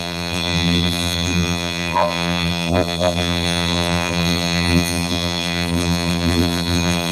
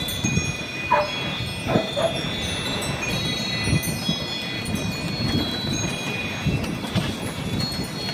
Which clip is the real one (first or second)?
second